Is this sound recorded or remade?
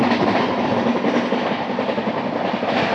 recorded